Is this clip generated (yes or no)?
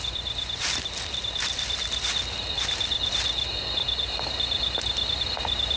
no